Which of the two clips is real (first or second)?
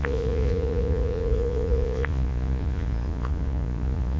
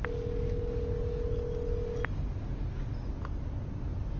second